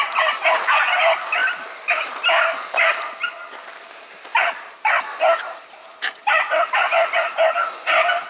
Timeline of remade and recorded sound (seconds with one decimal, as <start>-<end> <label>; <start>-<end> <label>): 0.0-8.3 recorded